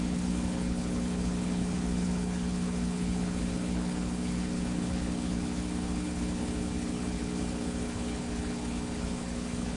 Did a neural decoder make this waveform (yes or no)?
yes